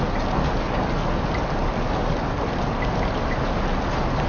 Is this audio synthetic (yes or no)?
no